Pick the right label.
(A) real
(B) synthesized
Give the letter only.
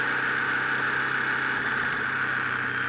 A